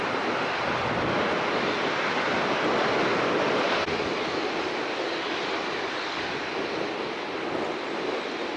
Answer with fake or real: real